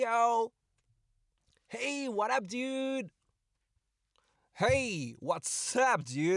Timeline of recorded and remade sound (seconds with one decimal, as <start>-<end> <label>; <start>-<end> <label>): 0.0-6.4 recorded